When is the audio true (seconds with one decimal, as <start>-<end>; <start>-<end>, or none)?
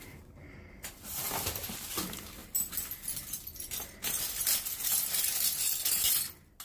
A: 0.0-6.6